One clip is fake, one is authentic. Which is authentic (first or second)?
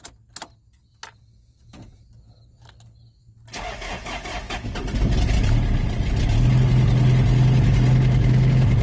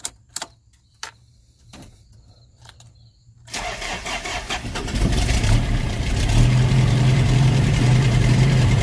first